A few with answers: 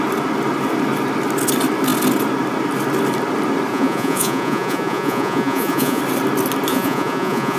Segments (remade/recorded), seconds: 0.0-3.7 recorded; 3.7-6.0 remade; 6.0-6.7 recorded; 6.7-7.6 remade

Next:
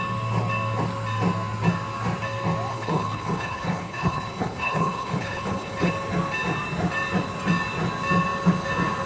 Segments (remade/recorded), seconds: 0.0-2.7 recorded; 2.7-5.9 remade; 5.9-9.1 recorded

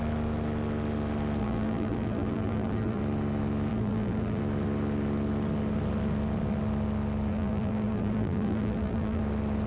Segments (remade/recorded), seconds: 0.0-1.4 recorded; 1.4-3.0 remade; 3.0-3.7 recorded; 3.7-4.4 remade; 4.4-7.3 recorded; 7.3-9.2 remade; 9.2-9.7 recorded

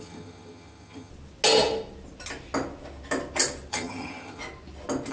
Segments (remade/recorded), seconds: 0.0-1.1 remade; 1.1-3.7 recorded; 3.7-4.4 remade; 4.4-5.1 recorded

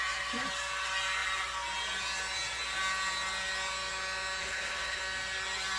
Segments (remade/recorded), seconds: 0.0-4.4 recorded; 4.4-5.0 remade; 5.0-5.8 recorded

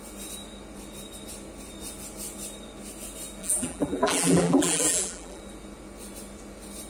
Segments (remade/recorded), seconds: 0.0-3.4 recorded; 3.4-5.4 remade; 5.4-6.9 recorded

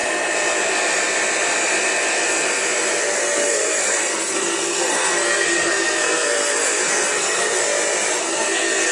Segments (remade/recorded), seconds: 0.0-3.0 recorded; 3.0-7.6 remade; 7.6-8.2 recorded; 8.2-8.9 remade